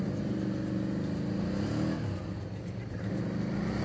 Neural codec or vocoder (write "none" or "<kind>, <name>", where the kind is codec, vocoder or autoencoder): none